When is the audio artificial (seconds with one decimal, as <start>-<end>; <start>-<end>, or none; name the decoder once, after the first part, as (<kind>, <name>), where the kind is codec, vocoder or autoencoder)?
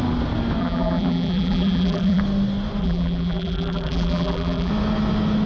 0.6-2.2 (vocoder, BigVGAN v2); 2.8-4.7